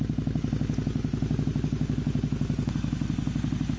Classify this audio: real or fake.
real